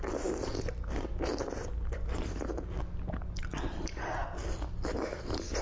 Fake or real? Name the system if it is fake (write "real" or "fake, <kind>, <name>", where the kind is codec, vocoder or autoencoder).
real